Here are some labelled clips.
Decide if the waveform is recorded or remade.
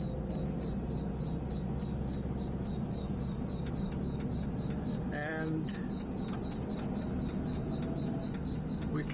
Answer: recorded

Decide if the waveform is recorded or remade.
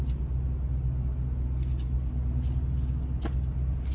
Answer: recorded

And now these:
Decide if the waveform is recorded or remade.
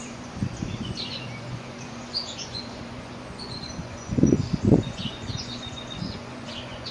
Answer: remade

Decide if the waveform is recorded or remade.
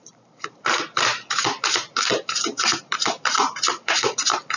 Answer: remade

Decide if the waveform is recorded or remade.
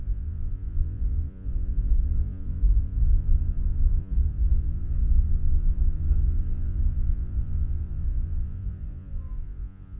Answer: remade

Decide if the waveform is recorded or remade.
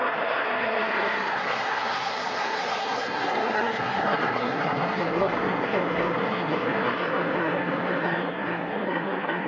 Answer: remade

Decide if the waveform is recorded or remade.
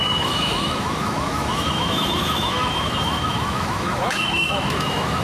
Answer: remade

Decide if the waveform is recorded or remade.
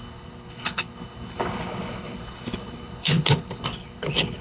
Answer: remade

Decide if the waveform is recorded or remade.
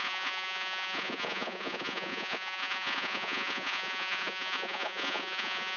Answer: remade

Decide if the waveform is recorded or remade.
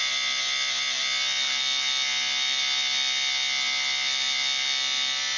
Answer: recorded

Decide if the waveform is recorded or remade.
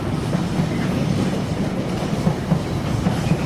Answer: remade